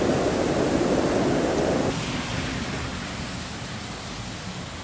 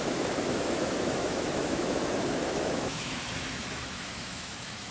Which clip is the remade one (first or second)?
second